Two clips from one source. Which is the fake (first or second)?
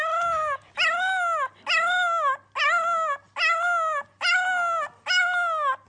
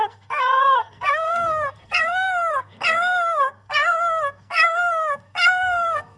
second